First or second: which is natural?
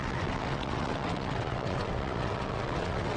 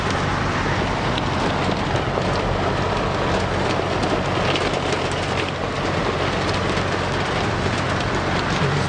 second